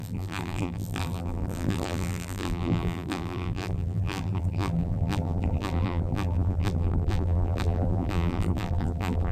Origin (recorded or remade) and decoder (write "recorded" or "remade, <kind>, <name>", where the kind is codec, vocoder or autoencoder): remade, vocoder, BigVGAN v2